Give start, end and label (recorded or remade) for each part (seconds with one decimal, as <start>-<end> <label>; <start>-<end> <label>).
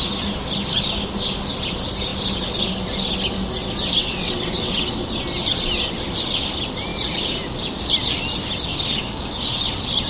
0.0-4.0 recorded; 4.0-4.8 remade; 4.8-10.1 recorded